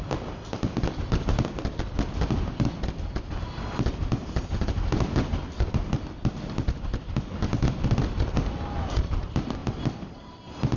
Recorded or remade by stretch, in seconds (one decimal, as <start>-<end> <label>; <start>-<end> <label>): 0.0-10.8 recorded

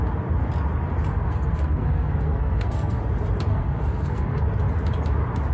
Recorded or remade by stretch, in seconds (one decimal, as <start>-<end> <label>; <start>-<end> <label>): 0.0-1.1 recorded; 1.1-3.0 remade; 3.0-3.5 recorded; 3.5-4.4 remade; 4.4-5.5 recorded

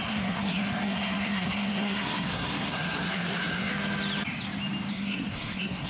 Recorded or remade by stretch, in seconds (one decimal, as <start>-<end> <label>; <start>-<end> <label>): 0.0-3.7 remade; 3.7-4.9 recorded; 4.9-5.9 remade

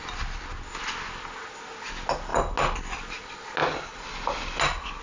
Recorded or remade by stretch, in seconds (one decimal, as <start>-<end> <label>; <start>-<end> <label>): 0.0-5.0 recorded

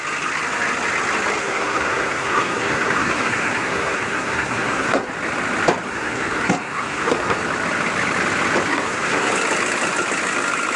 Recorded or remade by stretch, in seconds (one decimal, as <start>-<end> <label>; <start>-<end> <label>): 0.0-1.4 recorded; 1.4-5.1 remade; 5.1-5.9 recorded; 5.9-7.4 remade; 7.4-8.7 recorded; 8.7-9.3 remade; 9.3-10.8 recorded